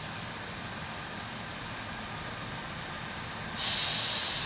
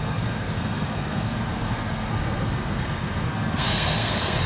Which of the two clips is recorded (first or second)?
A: first